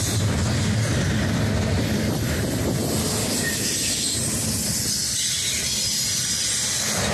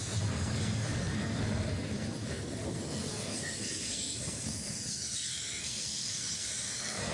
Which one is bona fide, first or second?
first